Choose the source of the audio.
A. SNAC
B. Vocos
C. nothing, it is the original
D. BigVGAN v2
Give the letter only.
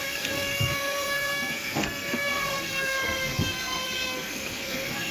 A